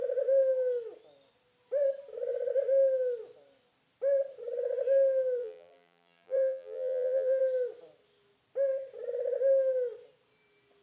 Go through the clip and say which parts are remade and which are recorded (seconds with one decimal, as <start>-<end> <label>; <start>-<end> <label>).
0.0-5.4 recorded; 5.4-7.4 remade; 7.4-10.8 recorded